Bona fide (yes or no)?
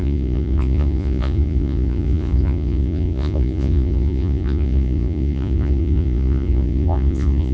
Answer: no